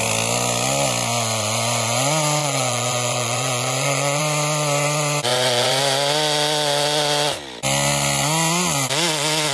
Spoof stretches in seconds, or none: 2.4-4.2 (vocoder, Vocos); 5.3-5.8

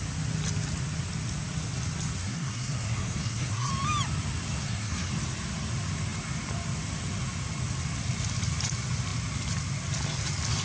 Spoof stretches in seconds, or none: 2.2-3.7 (codec, SNAC); 4.6-5.1

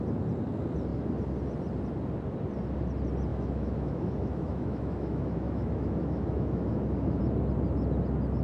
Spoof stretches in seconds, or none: 3.3-7.2 (autoencoder, DAC-VAE)

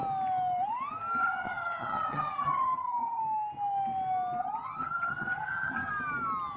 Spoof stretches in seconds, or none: 1.2-3.2 (vocoder, HiFi-GAN); 4.4-5.9

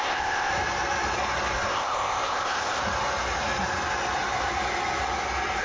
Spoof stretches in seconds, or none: 0.0-0.5 (codec, ZipCodec); 1.7-2.8

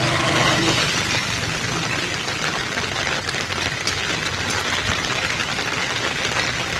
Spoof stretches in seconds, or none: none